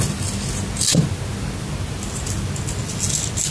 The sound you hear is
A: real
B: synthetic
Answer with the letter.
A